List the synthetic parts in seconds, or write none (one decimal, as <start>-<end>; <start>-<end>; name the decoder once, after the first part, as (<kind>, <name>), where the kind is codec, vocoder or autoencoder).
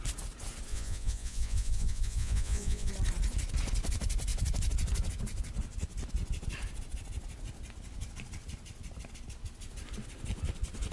0.7-2.9 (vocoder, Vocos)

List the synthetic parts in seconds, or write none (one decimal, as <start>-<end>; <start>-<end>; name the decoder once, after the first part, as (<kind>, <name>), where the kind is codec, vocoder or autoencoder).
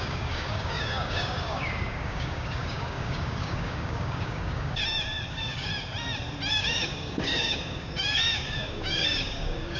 0.0-4.8 (codec, DAC); 5.3-5.7; 6.5-9.8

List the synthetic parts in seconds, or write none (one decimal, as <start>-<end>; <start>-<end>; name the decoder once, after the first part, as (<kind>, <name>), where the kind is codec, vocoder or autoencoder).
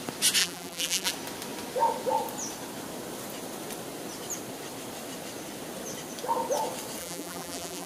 0.4-1.1 (vocoder, BigVGAN v2); 7.0-7.9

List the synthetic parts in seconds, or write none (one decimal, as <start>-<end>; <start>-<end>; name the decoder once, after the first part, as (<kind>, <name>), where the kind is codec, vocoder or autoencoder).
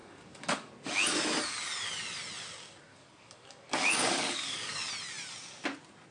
0.0-0.7 (codec, DAC); 2.9-4.9